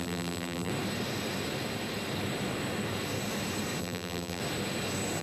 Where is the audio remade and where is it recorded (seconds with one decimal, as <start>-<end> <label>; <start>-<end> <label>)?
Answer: 0.0-0.7 remade; 0.7-3.8 recorded; 3.8-4.4 remade; 4.4-5.2 recorded